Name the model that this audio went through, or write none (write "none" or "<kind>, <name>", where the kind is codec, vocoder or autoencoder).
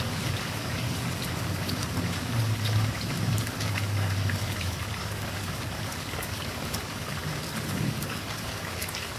codec, DAC